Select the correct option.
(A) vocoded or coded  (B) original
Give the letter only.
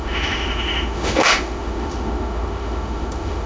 A